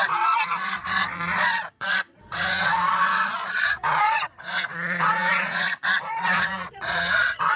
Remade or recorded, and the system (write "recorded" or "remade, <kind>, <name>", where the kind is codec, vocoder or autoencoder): remade, vocoder, Vocos